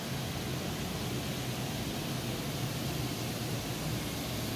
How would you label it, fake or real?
real